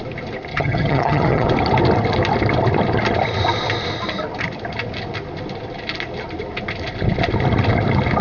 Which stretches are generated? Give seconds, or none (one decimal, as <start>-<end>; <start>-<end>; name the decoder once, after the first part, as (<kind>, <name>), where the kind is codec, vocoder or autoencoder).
0.5-1.5 (vocoder, HiFi-GAN)